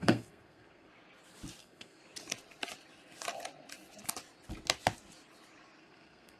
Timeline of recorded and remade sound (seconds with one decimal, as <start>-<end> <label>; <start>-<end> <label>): 0.0-0.9 remade; 0.9-1.6 recorded; 1.6-2.0 remade; 2.0-5.8 recorded; 5.8-6.4 remade